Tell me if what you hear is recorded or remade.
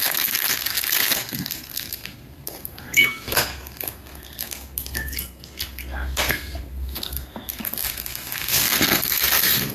remade